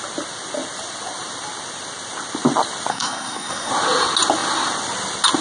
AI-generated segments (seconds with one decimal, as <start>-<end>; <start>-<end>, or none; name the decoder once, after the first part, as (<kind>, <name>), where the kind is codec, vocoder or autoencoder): 2.9-3.7 (codec, SNAC)